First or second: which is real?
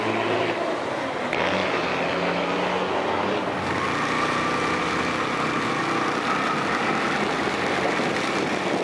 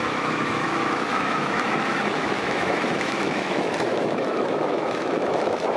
first